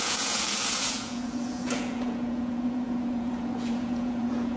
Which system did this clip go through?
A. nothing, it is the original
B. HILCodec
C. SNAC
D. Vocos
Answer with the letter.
D